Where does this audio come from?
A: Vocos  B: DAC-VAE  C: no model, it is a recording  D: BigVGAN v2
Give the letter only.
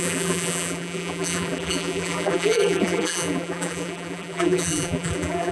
D